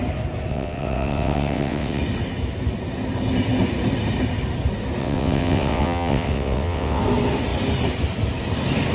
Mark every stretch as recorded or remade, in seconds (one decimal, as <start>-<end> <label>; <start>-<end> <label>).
0.0-0.5 recorded; 0.5-2.0 remade; 2.0-5.0 recorded; 5.0-7.0 remade; 7.0-8.9 recorded